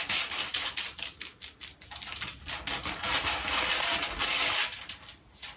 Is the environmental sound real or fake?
real